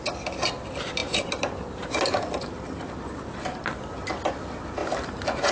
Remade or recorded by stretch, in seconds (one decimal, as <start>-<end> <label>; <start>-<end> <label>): 0.0-5.5 recorded